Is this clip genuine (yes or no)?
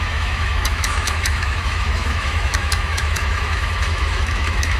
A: no